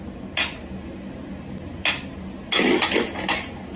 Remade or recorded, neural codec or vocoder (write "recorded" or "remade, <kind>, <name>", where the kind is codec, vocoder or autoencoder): recorded